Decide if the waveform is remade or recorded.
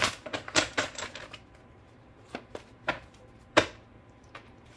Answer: remade